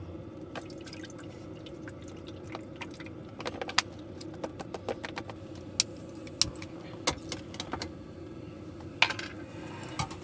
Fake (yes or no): no